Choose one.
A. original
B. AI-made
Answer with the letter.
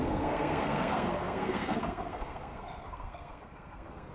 B